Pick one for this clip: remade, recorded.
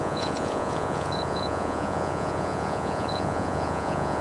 remade